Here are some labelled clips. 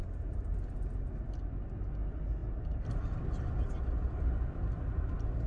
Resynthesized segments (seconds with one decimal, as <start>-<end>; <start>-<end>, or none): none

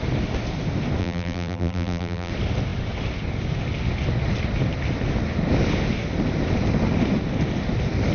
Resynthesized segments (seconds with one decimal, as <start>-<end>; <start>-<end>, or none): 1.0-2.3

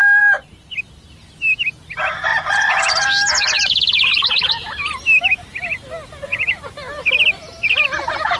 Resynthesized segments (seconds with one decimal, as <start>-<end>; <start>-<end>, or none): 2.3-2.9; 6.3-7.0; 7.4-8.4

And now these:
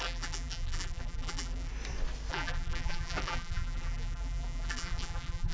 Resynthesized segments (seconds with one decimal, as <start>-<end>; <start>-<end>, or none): 0.0-1.7; 2.3-5.5

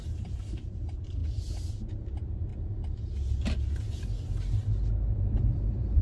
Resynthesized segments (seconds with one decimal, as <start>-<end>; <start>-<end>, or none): 0.0-2.5; 5.1-6.0